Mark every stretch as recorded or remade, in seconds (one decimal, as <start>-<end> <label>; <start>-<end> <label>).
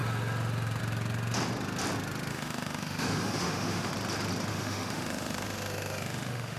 0.0-2.3 recorded; 2.3-3.9 remade; 3.9-4.5 recorded; 4.5-6.6 remade